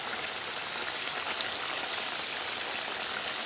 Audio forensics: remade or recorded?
recorded